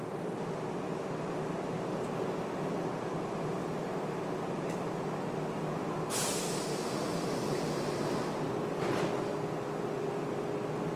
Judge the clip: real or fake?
real